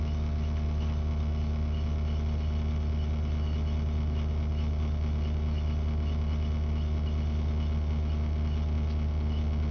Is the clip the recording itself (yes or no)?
yes